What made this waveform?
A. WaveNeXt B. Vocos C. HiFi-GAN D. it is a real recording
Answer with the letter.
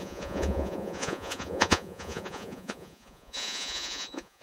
B